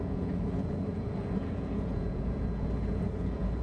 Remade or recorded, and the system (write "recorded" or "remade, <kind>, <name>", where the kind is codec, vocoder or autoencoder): remade, vocoder, Vocos